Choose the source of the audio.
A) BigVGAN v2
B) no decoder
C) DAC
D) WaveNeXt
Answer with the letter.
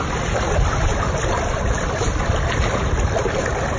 B